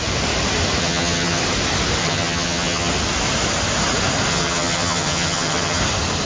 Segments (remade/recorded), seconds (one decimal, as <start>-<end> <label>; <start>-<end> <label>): 0.0-0.8 recorded; 0.8-1.4 remade; 1.4-2.0 recorded; 2.0-2.9 remade; 2.9-4.3 recorded; 4.3-5.8 remade; 5.8-6.2 recorded